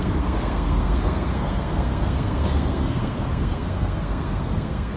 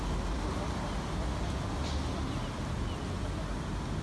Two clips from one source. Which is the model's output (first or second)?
first